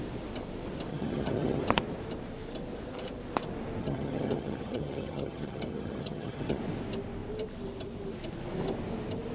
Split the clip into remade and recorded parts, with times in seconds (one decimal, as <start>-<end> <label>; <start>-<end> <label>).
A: 0.0-0.9 recorded; 0.9-1.6 remade; 1.6-3.8 recorded; 3.8-6.6 remade; 6.6-9.3 recorded